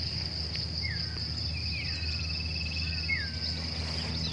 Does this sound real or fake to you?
fake